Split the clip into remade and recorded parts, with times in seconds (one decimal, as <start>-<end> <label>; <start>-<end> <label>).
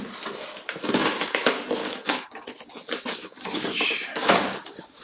0.0-1.8 recorded; 1.8-5.0 remade